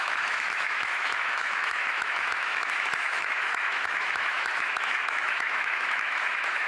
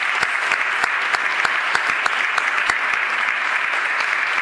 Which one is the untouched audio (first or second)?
second